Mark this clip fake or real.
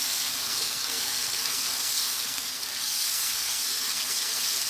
fake